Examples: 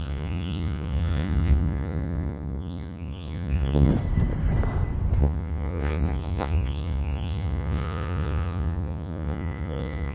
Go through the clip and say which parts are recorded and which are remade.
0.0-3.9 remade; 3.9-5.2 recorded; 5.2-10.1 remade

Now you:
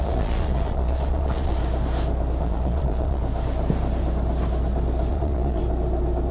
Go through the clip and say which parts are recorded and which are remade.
0.0-1.6 remade; 1.6-2.4 recorded; 2.4-3.2 remade; 3.2-5.1 recorded; 5.1-5.6 remade; 5.6-6.3 recorded

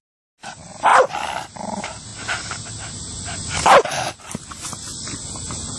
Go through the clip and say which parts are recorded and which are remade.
0.0-5.8 recorded

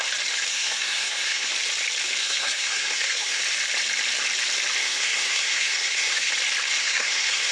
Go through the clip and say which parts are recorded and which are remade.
0.0-0.5 recorded; 0.5-1.5 remade; 1.5-2.2 recorded; 2.2-3.4 remade; 3.4-4.8 recorded; 4.8-6.3 remade; 6.3-6.8 recorded; 6.8-7.5 remade

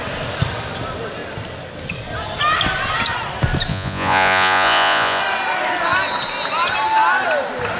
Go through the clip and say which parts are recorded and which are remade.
0.0-3.7 recorded; 3.7-5.2 remade; 5.2-7.8 recorded